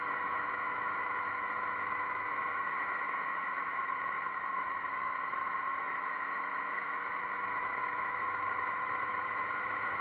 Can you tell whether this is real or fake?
fake